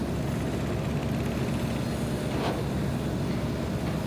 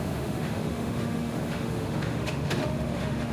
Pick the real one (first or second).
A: first